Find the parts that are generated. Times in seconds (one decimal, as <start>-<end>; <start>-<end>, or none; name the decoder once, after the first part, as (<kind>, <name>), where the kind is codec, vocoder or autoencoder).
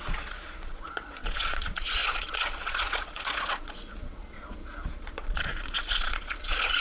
0.0-6.8 (vocoder, Vocos)